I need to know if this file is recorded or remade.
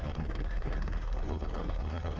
remade